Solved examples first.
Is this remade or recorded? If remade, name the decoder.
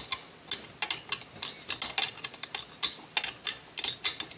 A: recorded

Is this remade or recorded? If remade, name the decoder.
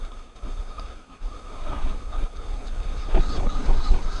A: remade, codec, SNAC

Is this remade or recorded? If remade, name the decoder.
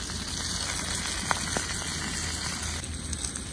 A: recorded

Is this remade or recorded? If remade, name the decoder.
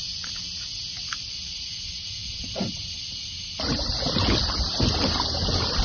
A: recorded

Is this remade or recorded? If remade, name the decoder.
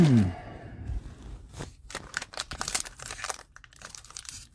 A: remade, vocoder, BigVGAN v2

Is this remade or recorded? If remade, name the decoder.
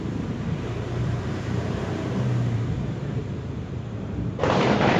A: remade, vocoder, BigVGAN v2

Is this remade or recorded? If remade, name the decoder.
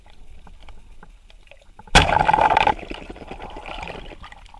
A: recorded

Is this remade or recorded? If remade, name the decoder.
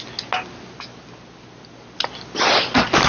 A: recorded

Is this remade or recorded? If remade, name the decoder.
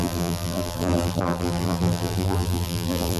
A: remade, vocoder, BigVGAN v2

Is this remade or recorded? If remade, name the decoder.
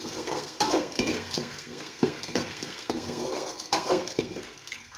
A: remade, codec, SNAC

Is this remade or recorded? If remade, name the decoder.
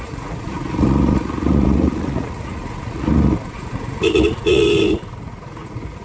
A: remade, vocoder, Vocos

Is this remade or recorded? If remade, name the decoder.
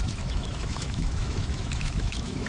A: remade, autoencoder, DAC-VAE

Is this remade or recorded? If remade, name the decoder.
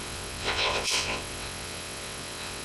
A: remade, vocoder, WaveNeXt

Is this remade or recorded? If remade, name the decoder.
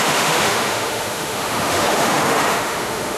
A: remade, autoencoder, DAC-VAE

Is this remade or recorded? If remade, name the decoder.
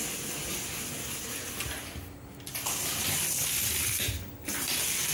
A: recorded